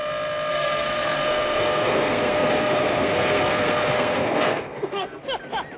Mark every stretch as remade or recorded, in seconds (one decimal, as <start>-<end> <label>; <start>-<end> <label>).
0.0-0.5 recorded; 0.5-5.2 remade; 5.2-5.8 recorded